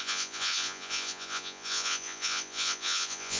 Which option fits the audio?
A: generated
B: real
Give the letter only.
A